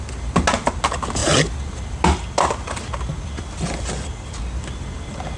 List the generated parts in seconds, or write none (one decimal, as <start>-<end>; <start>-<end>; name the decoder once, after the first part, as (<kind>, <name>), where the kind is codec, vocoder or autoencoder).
none